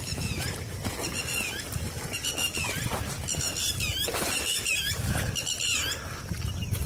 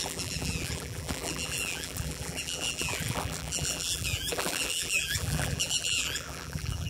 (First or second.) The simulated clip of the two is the second